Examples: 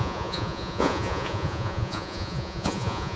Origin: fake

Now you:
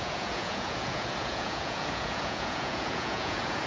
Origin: fake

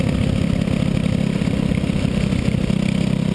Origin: real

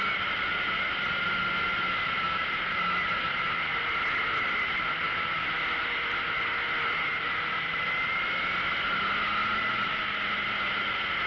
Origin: real